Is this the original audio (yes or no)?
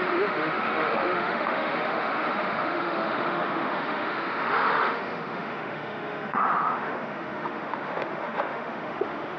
no